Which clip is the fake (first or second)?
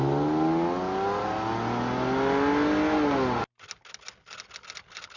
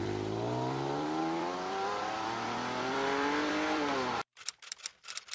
second